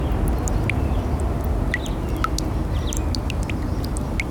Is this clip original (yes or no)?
yes